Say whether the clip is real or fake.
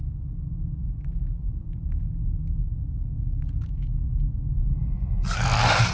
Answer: real